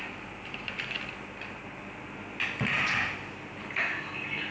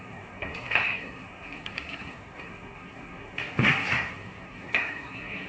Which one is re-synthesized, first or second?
second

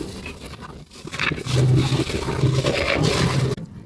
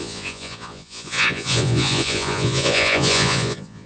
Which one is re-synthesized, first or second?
second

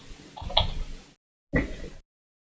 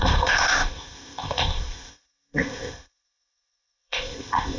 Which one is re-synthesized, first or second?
second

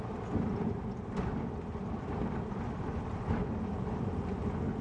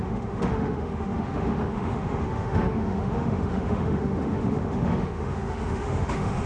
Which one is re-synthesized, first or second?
second